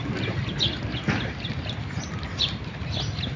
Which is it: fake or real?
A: real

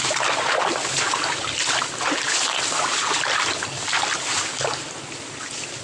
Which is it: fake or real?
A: real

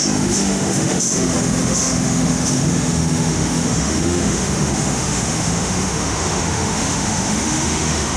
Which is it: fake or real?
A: fake